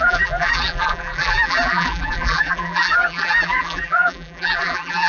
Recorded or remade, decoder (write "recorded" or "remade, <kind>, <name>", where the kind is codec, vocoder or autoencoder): remade, vocoder, BigVGAN v2